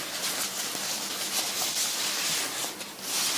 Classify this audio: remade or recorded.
recorded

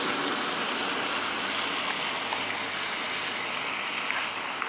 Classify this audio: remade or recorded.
recorded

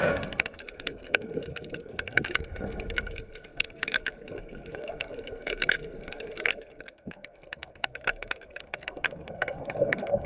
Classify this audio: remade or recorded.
remade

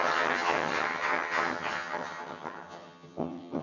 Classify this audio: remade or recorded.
remade